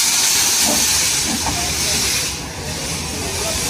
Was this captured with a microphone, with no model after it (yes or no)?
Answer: yes